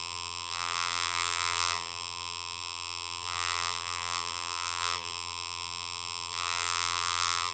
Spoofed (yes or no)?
yes